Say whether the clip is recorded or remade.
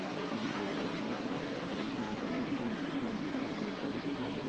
remade